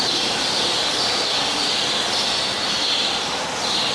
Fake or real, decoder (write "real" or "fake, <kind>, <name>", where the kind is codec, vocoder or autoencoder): real